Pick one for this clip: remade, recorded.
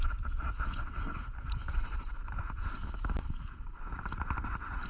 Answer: remade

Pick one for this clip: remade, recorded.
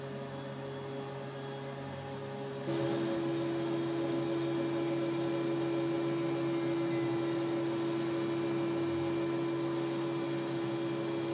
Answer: recorded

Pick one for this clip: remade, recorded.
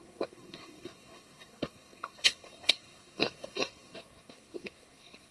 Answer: remade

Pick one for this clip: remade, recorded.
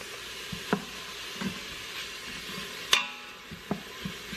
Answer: recorded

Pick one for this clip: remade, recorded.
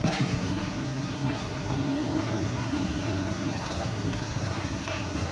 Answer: remade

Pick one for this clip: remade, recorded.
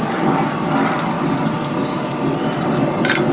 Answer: recorded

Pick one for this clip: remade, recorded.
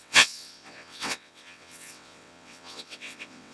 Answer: remade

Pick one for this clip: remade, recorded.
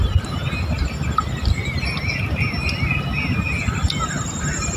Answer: recorded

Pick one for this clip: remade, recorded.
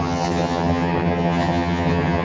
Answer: remade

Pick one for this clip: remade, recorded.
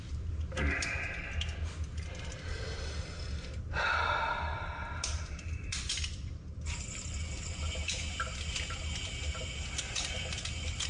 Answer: recorded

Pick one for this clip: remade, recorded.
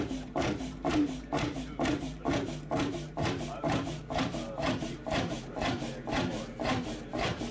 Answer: remade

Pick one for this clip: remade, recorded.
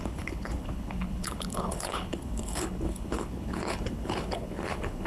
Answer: remade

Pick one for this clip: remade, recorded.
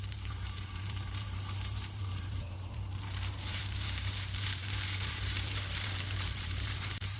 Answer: remade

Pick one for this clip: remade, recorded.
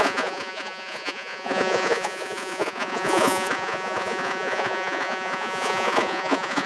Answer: remade